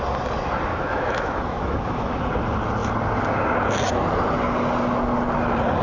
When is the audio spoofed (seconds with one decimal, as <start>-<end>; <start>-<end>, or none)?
0.7-2.2